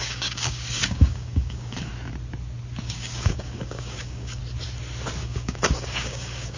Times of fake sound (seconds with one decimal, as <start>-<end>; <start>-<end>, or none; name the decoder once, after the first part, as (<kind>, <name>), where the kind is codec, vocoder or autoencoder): 0.0-1.9 (codec, DAC); 2.8-4.4; 5.2-6.6

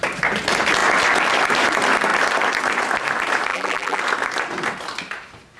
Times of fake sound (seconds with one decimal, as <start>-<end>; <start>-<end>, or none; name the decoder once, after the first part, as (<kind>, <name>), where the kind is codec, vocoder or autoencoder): 3.5-4.0 (vocoder, BigVGAN v2)